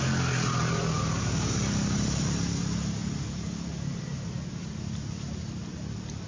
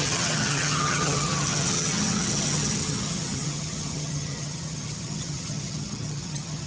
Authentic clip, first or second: first